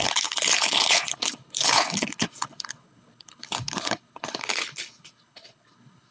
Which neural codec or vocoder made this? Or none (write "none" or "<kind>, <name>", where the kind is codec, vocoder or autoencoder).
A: codec, HILCodec